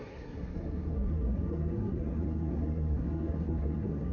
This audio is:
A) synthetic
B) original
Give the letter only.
A